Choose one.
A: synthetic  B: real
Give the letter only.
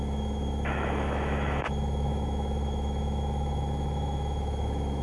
A